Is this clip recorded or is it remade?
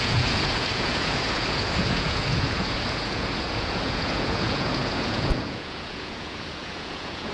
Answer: remade